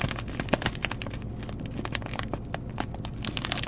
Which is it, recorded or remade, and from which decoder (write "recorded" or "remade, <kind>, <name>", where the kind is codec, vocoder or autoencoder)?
recorded